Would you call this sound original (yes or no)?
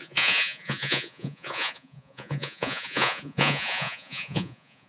no